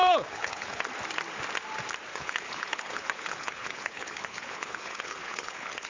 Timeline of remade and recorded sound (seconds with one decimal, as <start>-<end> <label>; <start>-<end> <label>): 0.0-0.8 remade; 0.8-2.1 recorded; 2.1-5.9 remade

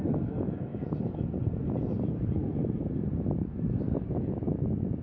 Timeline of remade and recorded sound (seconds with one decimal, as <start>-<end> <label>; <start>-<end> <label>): 0.0-5.0 recorded

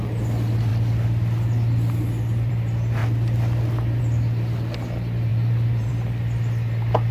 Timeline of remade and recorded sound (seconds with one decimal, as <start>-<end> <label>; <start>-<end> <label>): 0.0-5.3 recorded; 5.3-5.9 remade; 5.9-7.1 recorded

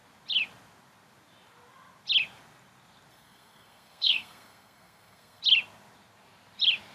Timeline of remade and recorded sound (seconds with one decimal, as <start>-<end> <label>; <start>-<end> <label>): 0.0-3.1 recorded; 3.1-5.4 remade; 5.4-6.9 recorded